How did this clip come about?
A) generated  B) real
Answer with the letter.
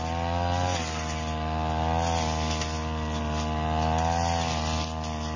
B